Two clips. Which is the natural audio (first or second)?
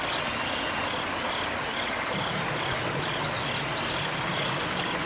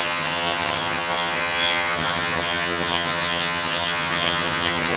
first